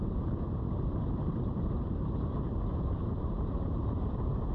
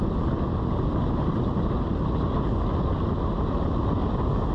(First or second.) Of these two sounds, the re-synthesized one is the first